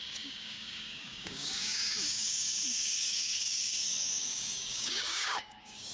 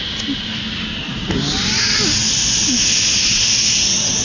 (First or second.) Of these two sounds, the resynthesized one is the first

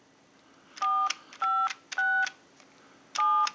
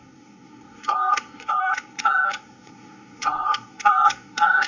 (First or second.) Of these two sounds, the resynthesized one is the second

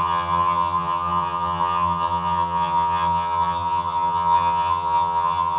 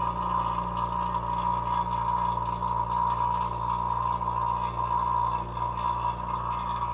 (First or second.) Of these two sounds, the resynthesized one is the first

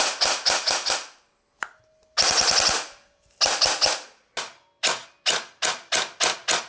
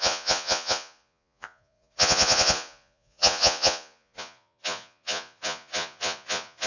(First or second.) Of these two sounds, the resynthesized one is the second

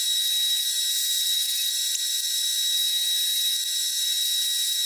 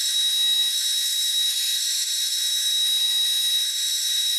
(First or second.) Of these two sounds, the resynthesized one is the second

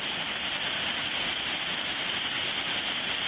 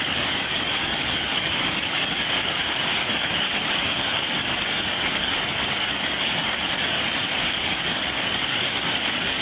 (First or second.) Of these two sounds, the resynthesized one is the second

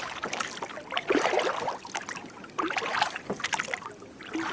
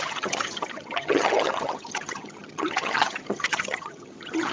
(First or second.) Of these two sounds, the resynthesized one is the second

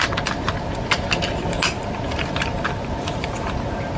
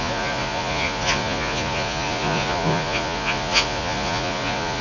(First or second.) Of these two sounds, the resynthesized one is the second